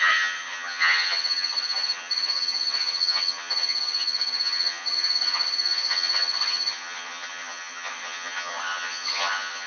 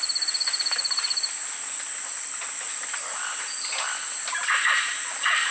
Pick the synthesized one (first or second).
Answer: first